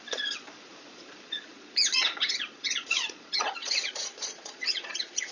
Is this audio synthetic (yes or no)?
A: yes